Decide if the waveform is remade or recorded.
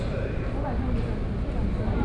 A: recorded